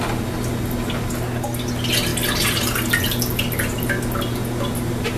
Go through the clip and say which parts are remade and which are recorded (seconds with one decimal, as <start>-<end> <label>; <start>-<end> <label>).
0.0-5.2 recorded